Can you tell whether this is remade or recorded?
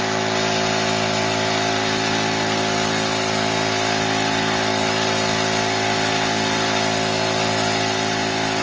recorded